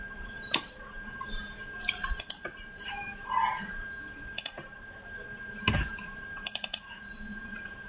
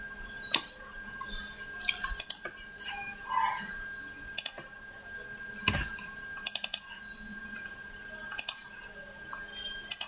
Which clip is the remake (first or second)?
first